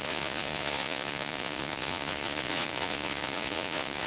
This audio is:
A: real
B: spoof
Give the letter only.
B